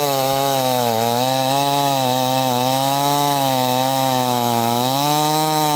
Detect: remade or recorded remade